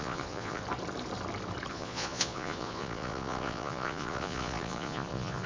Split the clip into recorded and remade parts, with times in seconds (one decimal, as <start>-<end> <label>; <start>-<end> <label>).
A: 0.0-0.6 remade; 0.6-1.7 recorded; 1.7-5.5 remade